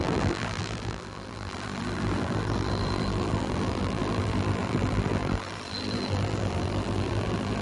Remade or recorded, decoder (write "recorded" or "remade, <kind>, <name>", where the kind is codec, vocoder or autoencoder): remade, vocoder, BigVGAN v2